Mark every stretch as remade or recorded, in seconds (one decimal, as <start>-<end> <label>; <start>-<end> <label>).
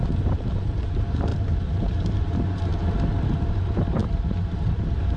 0.0-2.7 remade; 2.7-3.3 recorded; 3.3-5.2 remade